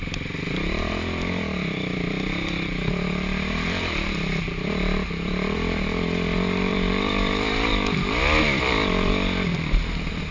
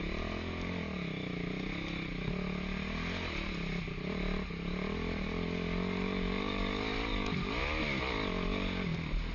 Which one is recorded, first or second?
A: second